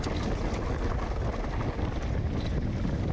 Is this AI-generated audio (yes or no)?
no